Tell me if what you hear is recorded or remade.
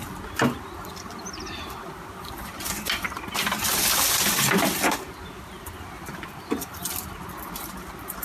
recorded